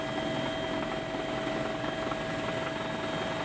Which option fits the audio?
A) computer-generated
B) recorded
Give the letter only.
B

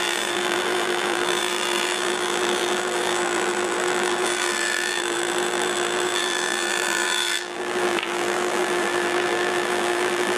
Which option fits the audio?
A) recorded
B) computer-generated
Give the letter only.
B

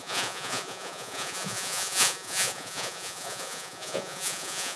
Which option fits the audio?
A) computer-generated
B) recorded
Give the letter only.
A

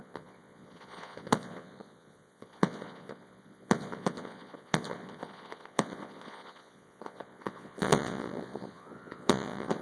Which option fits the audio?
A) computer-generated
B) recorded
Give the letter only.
A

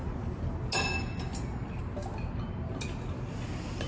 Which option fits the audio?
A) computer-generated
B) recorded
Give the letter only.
B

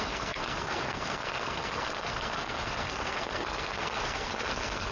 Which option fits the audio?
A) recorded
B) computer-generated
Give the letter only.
B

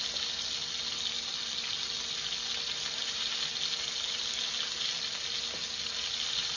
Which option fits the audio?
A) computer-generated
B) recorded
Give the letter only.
B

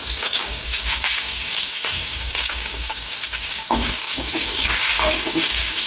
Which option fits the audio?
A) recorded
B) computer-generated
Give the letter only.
B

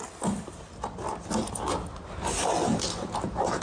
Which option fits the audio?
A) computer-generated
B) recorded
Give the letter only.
B